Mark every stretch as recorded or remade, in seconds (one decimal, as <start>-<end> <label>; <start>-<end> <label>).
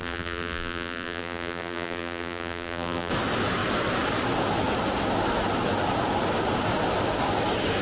0.0-3.1 remade; 3.1-7.8 recorded